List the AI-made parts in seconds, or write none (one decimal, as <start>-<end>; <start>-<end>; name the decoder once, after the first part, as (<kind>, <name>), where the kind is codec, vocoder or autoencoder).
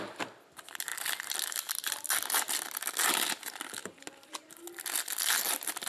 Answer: none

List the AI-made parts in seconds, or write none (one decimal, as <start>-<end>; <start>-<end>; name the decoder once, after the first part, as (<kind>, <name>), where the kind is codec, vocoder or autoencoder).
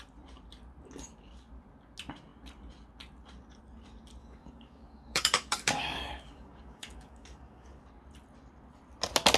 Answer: 4.2-7.8 (codec, DAC)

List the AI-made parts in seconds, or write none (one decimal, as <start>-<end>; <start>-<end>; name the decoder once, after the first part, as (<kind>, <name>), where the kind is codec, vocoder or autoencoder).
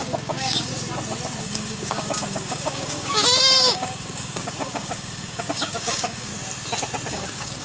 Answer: 0.0-0.7 (codec, DAC); 1.4-6.3; 7.1-7.6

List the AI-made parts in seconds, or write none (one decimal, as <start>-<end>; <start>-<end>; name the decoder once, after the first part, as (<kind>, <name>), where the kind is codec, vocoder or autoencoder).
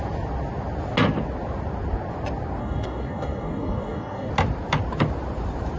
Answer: 2.6-4.3 (codec, DAC)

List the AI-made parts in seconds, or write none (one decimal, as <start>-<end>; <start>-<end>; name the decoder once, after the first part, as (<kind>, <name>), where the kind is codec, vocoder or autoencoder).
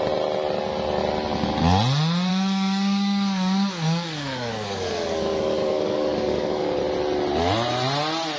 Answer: 2.3-6.8 (codec, DAC)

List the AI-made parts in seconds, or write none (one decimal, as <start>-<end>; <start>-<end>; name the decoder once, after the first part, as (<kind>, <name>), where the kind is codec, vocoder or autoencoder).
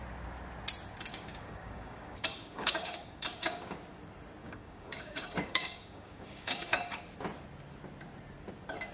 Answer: 1.1-3.8 (codec, DAC); 4.4-7.0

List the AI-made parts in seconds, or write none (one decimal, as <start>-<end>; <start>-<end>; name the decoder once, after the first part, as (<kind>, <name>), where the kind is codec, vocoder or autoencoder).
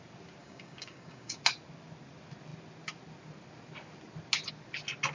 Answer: 0.4-1.4 (codec, DAC)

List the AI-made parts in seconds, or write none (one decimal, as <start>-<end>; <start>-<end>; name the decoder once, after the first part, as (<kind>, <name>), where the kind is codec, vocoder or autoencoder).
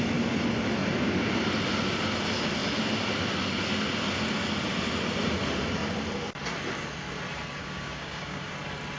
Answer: 7.6-8.5 (codec, DAC)